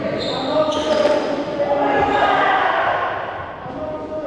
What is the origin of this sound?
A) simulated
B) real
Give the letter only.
B